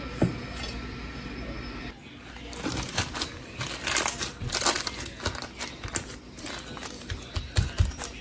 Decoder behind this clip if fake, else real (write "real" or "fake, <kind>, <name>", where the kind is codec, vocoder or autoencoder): real